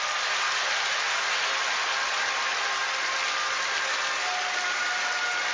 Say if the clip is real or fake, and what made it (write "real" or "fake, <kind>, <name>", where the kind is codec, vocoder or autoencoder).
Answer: real